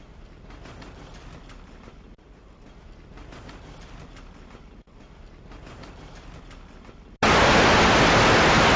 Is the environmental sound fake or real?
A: real